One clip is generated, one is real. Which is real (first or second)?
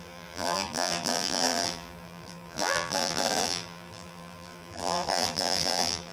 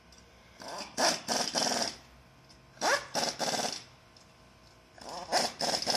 second